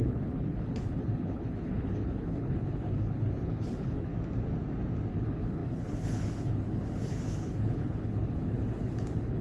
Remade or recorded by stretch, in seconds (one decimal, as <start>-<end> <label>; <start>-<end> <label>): 0.0-4.1 remade; 4.1-5.1 recorded; 5.1-9.4 remade